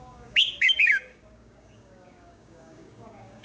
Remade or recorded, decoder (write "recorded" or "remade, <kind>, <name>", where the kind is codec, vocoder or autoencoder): remade, codec, DAC